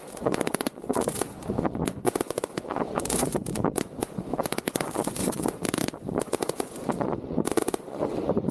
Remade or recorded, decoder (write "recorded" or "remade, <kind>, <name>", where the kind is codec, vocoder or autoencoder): remade, vocoder, Vocos